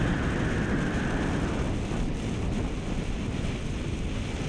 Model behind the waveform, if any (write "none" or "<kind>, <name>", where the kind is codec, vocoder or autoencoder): none